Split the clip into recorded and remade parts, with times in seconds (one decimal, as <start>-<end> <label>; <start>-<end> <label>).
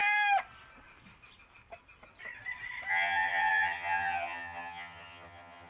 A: 0.0-2.9 recorded; 2.9-5.7 remade